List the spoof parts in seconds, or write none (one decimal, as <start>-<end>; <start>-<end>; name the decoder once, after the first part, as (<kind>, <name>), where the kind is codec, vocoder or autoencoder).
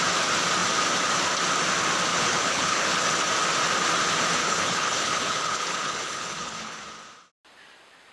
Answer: 2.1-3.0 (codec, HILCodec); 4.4-6.8